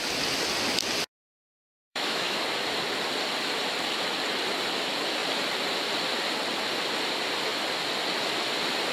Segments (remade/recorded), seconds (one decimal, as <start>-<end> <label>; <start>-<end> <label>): 0.0-1.9 recorded; 1.9-2.4 remade; 2.4-8.9 recorded

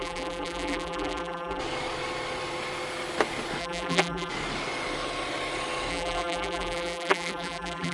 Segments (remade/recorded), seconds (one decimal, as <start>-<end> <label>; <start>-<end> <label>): 0.0-1.6 remade; 1.6-3.6 recorded; 3.6-4.3 remade; 4.3-5.9 recorded; 5.9-7.9 remade

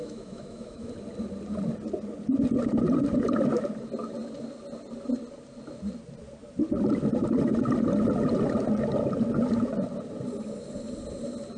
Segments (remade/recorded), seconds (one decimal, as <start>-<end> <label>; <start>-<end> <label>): 0.0-0.9 remade; 0.9-11.6 recorded

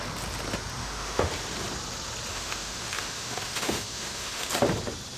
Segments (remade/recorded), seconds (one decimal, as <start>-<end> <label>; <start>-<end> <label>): 0.0-0.8 recorded; 0.8-1.3 remade; 1.3-2.3 recorded; 2.3-4.5 remade; 4.5-5.2 recorded

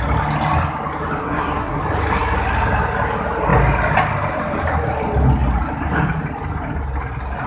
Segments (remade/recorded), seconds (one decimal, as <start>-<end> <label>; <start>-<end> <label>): 0.0-1.2 recorded; 1.2-1.8 remade; 1.8-7.5 recorded

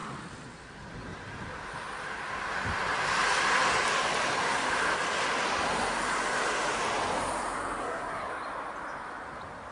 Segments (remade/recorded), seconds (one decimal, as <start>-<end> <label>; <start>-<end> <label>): 0.0-7.8 recorded; 7.8-8.3 remade; 8.3-9.7 recorded